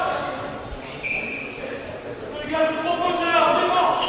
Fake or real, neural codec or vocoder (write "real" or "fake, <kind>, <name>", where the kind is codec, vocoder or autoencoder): real